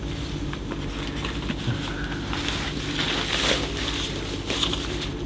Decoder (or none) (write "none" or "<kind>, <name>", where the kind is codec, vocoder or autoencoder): none